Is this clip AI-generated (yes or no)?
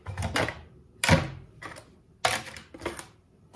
no